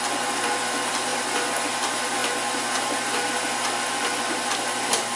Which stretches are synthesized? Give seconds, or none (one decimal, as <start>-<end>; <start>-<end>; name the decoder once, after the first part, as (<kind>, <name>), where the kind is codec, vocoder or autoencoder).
none